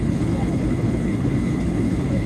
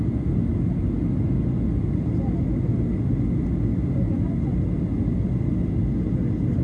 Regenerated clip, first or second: first